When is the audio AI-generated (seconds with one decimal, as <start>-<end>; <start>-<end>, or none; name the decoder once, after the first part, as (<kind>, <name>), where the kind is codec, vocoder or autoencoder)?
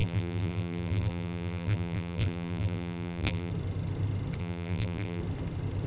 0.0-3.5 (vocoder, BigVGAN v2); 4.4-5.2